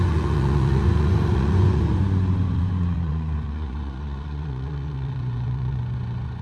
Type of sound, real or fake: fake